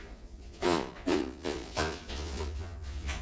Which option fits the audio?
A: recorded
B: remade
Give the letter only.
B